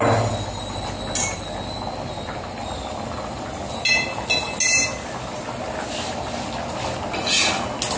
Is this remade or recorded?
recorded